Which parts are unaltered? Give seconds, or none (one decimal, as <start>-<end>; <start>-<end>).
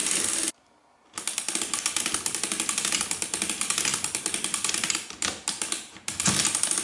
0.0-6.8